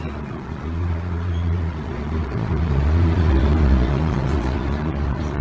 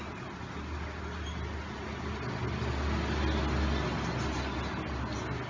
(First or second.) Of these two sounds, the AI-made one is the first